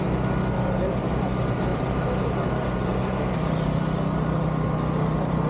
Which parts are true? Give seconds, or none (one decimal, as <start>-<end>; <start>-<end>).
0.0-1.7; 3.8-5.5